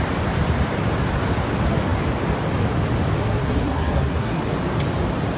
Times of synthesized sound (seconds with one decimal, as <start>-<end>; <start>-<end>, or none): 3.2-4.4